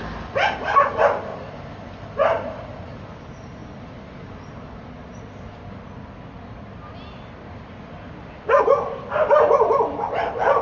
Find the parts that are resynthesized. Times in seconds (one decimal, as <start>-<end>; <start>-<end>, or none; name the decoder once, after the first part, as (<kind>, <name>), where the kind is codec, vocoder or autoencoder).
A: none